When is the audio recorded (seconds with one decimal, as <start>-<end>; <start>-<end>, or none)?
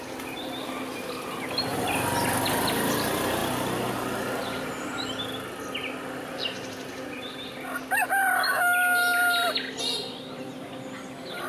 0.0-11.5